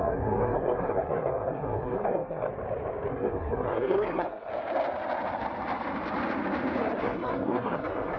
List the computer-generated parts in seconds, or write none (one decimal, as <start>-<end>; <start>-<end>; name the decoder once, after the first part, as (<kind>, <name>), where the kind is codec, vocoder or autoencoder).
0.0-2.5 (codec, SNAC); 3.1-4.5; 7.0-8.2